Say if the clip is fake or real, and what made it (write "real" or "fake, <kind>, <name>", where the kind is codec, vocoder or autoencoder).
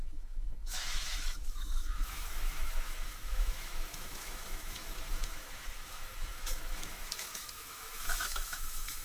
fake, autoencoder, DAC-VAE